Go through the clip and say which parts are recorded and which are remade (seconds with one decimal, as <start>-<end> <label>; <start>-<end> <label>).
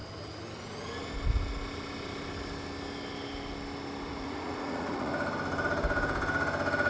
0.0-4.1 recorded; 4.1-5.1 remade; 5.1-6.9 recorded